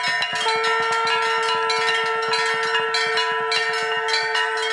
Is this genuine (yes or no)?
yes